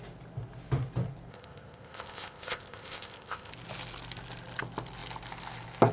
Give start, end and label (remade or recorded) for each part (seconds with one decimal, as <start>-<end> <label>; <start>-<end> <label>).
0.0-1.3 recorded; 1.3-3.5 remade; 3.5-5.9 recorded